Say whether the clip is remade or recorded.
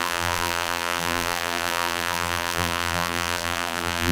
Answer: remade